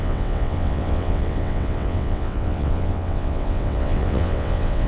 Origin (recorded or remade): remade